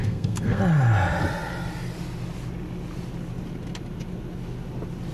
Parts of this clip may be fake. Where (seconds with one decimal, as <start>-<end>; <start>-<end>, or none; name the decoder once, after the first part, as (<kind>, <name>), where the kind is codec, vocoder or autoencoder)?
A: 0.0-0.6 (codec, SNAC)